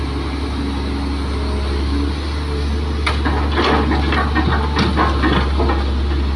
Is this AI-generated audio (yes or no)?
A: no